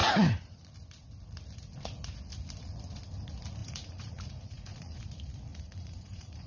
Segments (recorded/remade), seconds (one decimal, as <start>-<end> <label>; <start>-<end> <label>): 0.0-0.7 remade; 0.7-3.6 recorded; 3.6-5.0 remade; 5.0-5.5 recorded; 5.5-6.5 remade